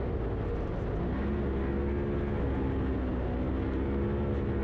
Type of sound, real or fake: real